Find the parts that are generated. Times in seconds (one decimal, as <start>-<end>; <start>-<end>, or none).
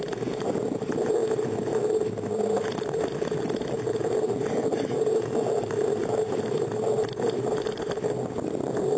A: none